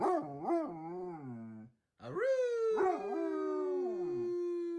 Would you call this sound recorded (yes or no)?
yes